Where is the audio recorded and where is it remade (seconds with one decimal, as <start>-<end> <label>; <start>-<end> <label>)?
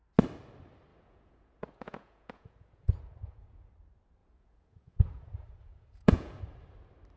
0.0-0.9 recorded; 0.9-3.7 remade; 3.7-4.2 recorded; 4.2-6.4 remade; 6.4-7.2 recorded